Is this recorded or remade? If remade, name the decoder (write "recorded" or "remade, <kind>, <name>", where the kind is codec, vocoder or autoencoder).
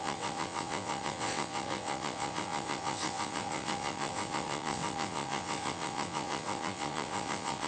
remade, vocoder, WaveNeXt